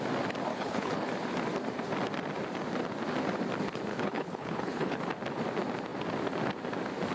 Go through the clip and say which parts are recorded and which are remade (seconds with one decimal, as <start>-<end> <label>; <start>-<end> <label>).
0.0-0.5 recorded; 0.5-1.1 remade; 1.1-3.9 recorded; 3.9-5.0 remade; 5.0-7.1 recorded